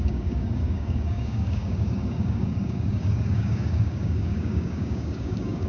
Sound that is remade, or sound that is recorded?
remade